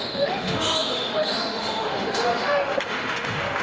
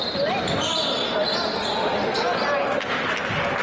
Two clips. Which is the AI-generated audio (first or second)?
first